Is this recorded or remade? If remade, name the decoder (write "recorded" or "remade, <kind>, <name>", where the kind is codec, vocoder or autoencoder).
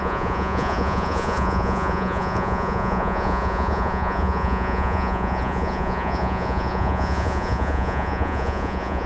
remade, vocoder, Vocos